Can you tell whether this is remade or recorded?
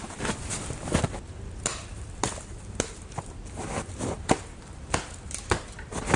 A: remade